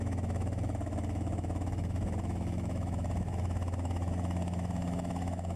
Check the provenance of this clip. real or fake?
fake